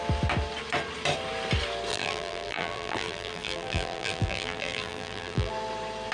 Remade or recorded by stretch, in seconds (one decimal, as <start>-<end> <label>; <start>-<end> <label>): 0.0-1.9 recorded; 1.9-5.5 remade; 5.5-6.1 recorded